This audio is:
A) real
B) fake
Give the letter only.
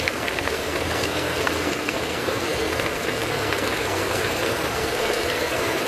B